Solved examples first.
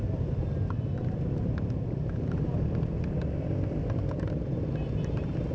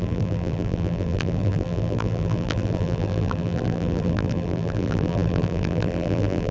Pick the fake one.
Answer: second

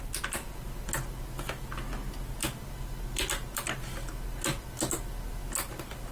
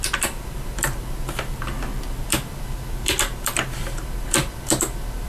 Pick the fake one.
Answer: second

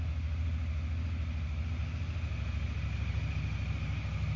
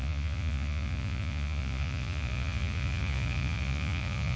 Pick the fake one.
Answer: second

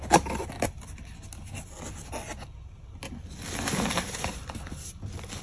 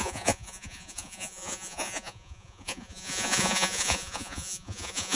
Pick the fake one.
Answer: second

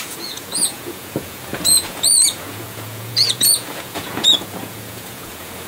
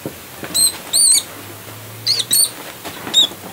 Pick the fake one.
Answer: first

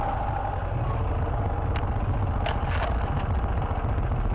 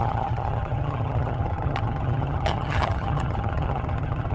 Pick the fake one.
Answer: second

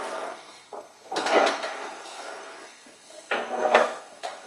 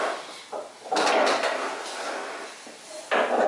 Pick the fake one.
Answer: first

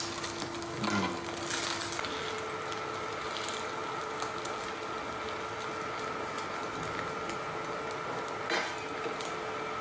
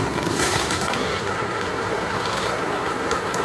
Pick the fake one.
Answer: second